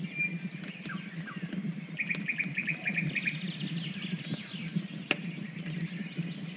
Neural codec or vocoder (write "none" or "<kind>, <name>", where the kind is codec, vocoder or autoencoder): none